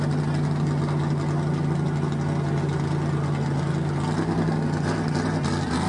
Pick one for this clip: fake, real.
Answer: real